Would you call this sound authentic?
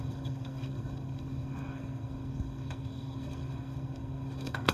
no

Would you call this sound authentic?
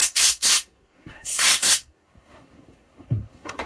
no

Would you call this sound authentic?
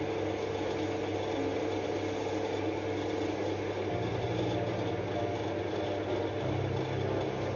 yes